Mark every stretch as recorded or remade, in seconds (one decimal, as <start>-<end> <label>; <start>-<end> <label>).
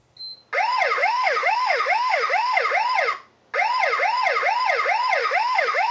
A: 0.0-1.0 recorded; 1.0-2.6 remade; 2.6-5.2 recorded; 5.2-5.9 remade